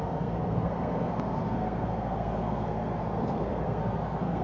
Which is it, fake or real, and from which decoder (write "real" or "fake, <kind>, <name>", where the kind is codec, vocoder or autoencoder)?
fake, codec, SNAC